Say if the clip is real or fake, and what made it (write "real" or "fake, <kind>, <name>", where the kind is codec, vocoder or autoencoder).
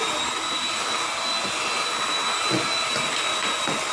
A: real